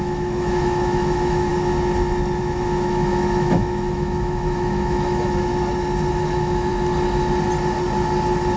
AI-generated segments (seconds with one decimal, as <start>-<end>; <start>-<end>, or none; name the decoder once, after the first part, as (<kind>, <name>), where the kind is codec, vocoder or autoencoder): 0.0-1.5 (autoencoder, DAC-VAE); 2.4-5.5; 6.1-6.7